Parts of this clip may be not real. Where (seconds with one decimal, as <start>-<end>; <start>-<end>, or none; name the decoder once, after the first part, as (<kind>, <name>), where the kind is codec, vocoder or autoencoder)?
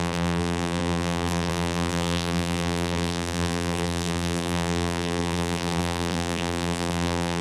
0.0-7.4 (vocoder, BigVGAN v2)